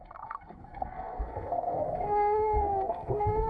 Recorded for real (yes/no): no